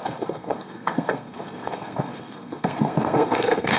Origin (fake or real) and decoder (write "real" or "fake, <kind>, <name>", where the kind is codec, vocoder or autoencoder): fake, codec, SNAC